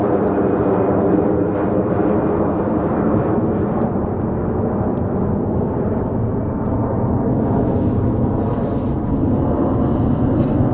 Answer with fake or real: real